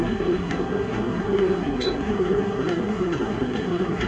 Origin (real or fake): fake